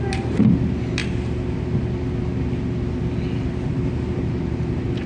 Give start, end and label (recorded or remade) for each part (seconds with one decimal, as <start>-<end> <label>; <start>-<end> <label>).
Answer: 0.0-5.1 recorded